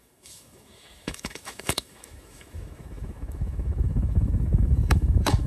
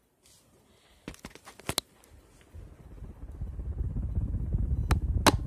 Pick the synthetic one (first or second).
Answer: first